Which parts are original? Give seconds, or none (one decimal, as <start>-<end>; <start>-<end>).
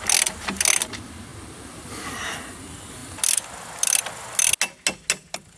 0.0-5.6